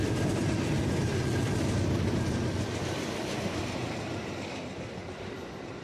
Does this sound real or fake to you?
real